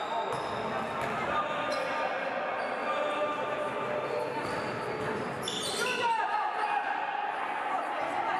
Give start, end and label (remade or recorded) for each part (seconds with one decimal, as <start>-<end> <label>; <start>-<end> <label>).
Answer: 0.0-8.4 recorded